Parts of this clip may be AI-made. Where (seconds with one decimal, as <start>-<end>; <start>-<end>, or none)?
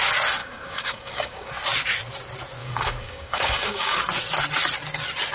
0.4-1.5; 2.6-4.0